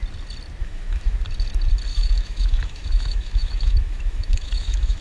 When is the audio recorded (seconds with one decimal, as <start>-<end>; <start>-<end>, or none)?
0.0-0.6; 1.2-1.9